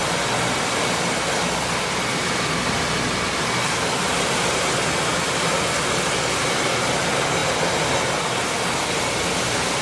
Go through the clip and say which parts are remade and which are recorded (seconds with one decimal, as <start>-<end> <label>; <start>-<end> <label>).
0.0-9.8 recorded